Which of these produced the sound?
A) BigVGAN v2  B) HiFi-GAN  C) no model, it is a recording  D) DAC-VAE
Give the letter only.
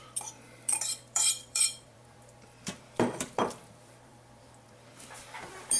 A